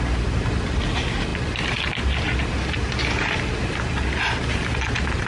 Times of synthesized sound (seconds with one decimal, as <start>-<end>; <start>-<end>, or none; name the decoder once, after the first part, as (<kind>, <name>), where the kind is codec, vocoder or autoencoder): none